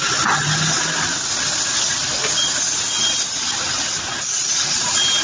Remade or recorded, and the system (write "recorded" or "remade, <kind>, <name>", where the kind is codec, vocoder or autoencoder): recorded